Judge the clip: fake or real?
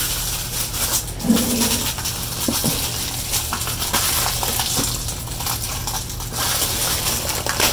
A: real